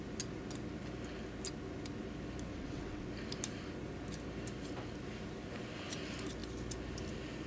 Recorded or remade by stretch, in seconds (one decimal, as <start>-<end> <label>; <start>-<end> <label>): 0.0-2.5 recorded; 2.5-3.1 remade; 3.1-7.5 recorded

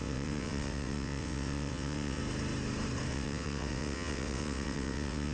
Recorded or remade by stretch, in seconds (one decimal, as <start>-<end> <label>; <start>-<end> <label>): 0.0-2.2 remade; 2.2-3.1 recorded; 3.1-5.3 remade

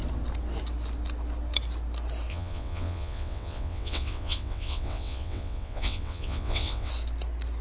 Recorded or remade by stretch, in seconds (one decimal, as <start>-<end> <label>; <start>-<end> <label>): 0.0-2.3 recorded; 2.3-6.9 remade; 6.9-7.6 recorded

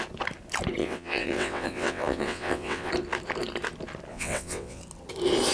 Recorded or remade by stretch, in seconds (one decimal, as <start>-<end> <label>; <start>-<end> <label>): 0.0-0.8 recorded; 0.8-2.9 remade; 2.9-4.1 recorded; 4.1-4.8 remade; 4.8-5.5 recorded